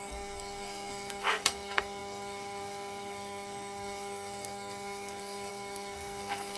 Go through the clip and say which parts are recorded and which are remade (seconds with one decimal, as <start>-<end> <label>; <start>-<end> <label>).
0.0-6.6 remade